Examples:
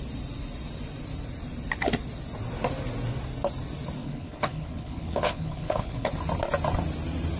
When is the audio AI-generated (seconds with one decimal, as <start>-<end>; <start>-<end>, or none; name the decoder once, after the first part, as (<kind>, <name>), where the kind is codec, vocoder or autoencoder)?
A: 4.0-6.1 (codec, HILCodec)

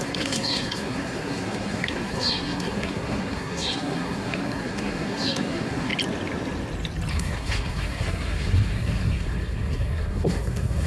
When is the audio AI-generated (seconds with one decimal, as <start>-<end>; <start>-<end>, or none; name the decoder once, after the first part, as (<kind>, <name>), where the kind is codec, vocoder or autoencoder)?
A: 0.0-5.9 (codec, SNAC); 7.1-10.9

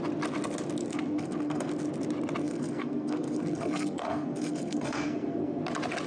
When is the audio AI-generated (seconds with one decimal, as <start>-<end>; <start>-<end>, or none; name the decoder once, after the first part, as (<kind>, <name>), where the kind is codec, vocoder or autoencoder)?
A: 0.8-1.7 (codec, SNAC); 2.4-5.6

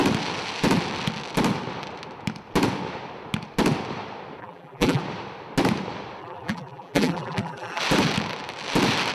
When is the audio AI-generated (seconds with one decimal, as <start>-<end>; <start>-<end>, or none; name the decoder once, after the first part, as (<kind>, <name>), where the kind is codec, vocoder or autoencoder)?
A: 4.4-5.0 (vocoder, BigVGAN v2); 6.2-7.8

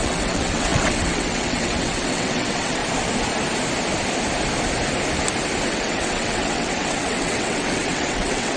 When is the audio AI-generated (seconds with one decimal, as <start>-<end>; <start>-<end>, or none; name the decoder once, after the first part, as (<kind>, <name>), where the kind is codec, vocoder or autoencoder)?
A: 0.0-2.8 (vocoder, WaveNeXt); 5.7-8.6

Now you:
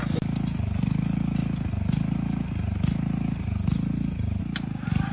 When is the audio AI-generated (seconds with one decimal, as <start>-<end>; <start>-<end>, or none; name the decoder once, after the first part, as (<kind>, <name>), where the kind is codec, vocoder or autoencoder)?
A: none

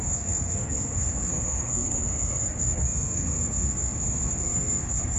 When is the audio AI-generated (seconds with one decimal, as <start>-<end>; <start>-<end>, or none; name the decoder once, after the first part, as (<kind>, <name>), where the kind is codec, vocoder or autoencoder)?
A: 0.0-5.2 (codec, SNAC)